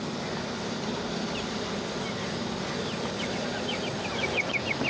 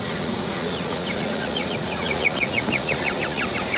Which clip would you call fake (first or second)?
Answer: second